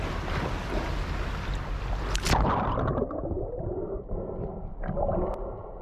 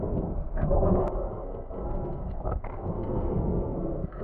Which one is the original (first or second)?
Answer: first